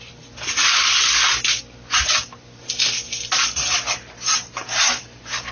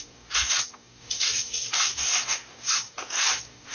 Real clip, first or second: first